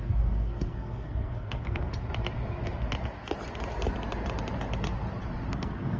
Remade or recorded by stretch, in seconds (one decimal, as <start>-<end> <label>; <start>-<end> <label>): 0.0-1.9 remade; 1.9-5.5 recorded; 5.5-6.0 remade